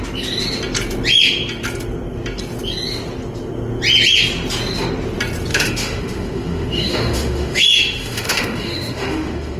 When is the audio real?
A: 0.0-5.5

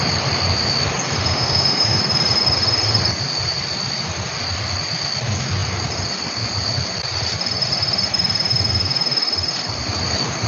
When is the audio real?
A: 0.0-1.3; 2.0-10.5

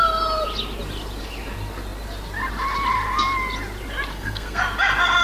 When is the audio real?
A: 0.0-4.1; 4.6-5.2

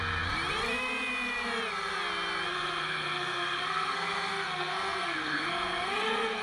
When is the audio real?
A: 0.0-2.5

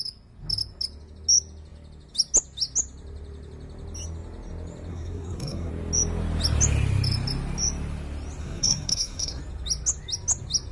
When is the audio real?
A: 0.0-4.9; 5.7-8.4; 9.4-10.7

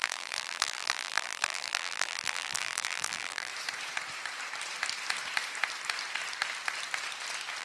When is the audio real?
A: 3.5-7.6